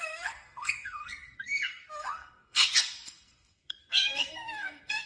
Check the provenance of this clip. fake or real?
fake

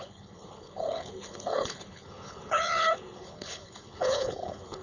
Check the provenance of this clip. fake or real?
fake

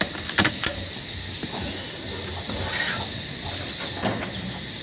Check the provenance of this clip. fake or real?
real